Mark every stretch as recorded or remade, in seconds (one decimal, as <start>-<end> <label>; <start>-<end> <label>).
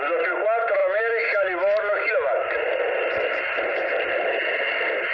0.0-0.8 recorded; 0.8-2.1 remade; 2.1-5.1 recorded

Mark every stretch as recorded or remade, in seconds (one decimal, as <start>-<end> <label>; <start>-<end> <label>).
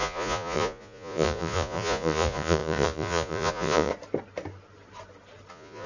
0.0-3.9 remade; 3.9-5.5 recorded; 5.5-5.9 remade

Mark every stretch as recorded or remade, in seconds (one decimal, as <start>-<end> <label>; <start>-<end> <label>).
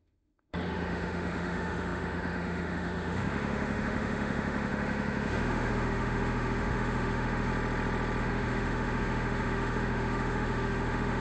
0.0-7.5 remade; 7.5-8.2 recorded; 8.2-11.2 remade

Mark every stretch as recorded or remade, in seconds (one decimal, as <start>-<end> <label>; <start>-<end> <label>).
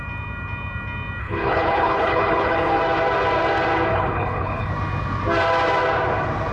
0.0-1.2 recorded; 1.2-2.8 remade; 2.8-3.9 recorded; 3.9-4.7 remade; 4.7-6.5 recorded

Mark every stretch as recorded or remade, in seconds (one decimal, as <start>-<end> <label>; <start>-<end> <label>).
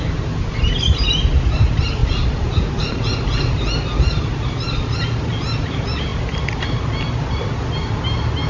0.0-8.5 recorded